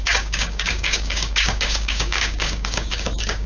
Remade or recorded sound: remade